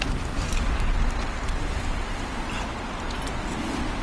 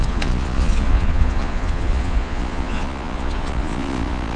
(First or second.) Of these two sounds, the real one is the first